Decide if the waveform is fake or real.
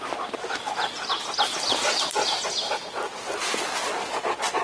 real